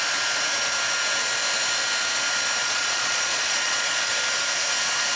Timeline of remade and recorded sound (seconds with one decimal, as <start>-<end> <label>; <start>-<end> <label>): 0.0-2.6 recorded; 2.6-4.1 remade; 4.1-5.2 recorded